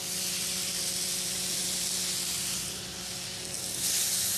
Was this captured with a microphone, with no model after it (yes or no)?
yes